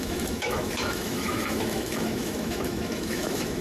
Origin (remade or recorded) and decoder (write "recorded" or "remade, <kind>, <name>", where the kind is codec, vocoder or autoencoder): remade, autoencoder, DAC-VAE